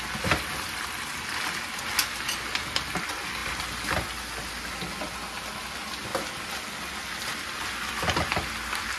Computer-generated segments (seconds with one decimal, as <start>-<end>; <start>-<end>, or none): none